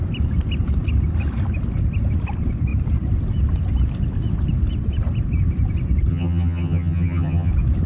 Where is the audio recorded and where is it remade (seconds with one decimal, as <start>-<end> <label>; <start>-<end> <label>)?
0.0-6.1 recorded; 6.1-7.5 remade; 7.5-7.9 recorded